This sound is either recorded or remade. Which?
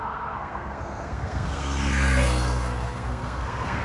remade